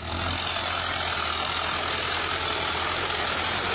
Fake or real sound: real